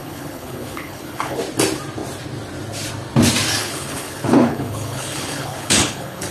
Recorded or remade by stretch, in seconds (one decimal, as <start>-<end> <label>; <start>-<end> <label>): 0.0-1.4 remade; 1.4-3.6 recorded; 3.6-6.3 remade

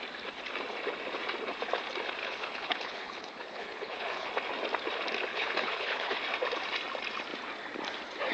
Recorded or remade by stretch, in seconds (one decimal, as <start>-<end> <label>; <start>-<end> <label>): 0.0-2.2 recorded; 2.2-4.3 remade; 4.3-5.3 recorded; 5.3-6.2 remade; 6.2-8.3 recorded

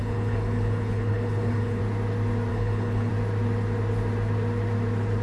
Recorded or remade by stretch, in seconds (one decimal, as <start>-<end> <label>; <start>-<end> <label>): 0.0-1.8 remade; 1.8-2.5 recorded; 2.5-3.1 remade; 3.1-5.2 recorded